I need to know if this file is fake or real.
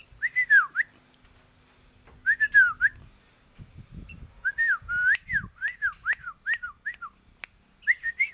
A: real